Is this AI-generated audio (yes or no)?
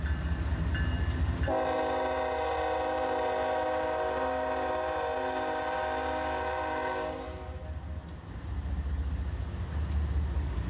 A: no